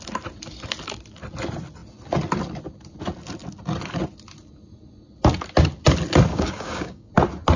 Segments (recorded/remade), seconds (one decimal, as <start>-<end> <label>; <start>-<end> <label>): 0.0-6.3 recorded; 6.3-7.1 remade; 7.1-7.6 recorded